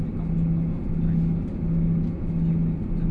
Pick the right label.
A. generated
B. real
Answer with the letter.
B